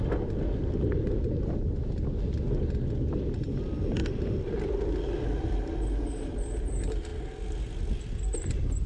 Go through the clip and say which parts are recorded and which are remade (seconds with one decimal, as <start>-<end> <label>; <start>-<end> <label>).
0.0-8.9 recorded